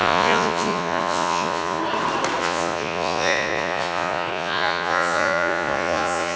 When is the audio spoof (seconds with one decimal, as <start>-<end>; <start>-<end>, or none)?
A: 0.0-1.8; 2.4-6.4